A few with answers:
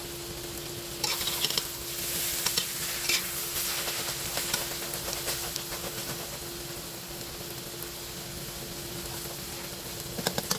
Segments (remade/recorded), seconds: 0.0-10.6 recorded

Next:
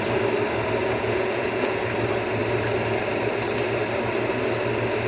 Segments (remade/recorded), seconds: 0.0-0.8 recorded; 0.8-1.8 remade; 1.8-5.1 recorded

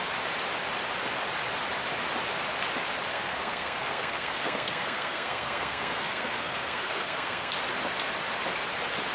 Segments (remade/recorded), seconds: 0.0-3.1 recorded; 3.1-7.5 remade; 7.5-9.1 recorded

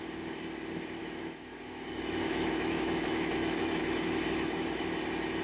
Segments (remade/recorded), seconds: 0.0-1.0 recorded; 1.0-3.8 remade; 3.8-5.4 recorded

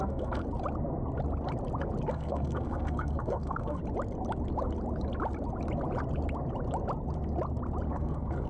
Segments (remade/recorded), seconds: 0.0-0.4 remade; 0.4-2.1 recorded; 2.1-3.8 remade; 3.8-7.9 recorded; 7.9-8.5 remade

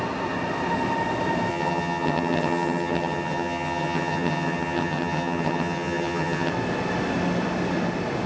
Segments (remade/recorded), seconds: 0.0-1.5 recorded; 1.5-6.5 remade; 6.5-8.3 recorded